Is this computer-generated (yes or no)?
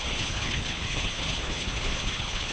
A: yes